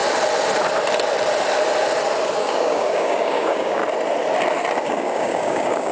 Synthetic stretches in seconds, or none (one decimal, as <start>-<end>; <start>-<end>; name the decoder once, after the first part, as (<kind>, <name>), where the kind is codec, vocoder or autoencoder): 2.4-3.8 (codec, DAC); 4.8-5.9